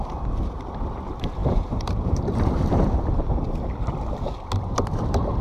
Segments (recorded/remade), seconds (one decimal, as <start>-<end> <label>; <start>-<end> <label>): 0.0-1.4 recorded; 1.4-2.9 remade; 2.9-5.4 recorded